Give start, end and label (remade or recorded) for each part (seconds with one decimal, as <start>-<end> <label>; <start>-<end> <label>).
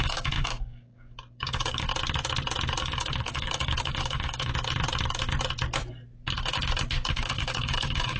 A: 0.0-1.9 remade; 1.9-2.8 recorded; 2.8-4.5 remade; 4.5-7.1 recorded; 7.1-8.2 remade